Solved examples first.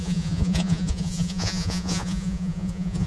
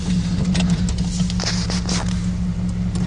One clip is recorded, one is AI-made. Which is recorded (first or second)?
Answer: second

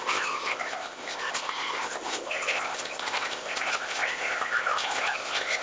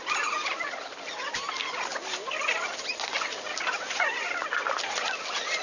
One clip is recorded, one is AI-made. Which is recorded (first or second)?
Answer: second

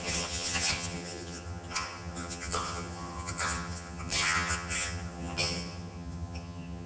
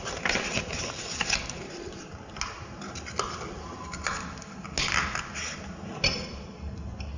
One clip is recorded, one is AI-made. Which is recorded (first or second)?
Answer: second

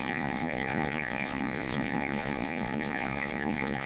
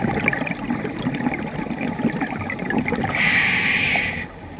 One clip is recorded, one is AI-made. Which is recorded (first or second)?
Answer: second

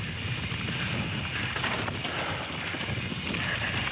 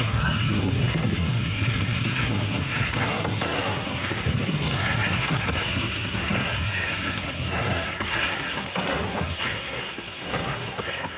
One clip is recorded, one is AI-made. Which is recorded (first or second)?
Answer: first